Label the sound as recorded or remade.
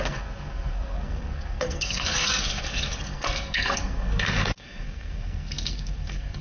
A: remade